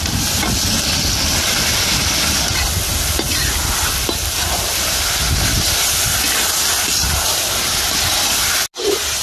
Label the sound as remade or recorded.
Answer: recorded